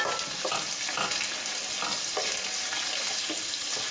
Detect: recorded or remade recorded